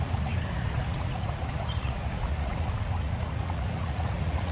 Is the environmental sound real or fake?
fake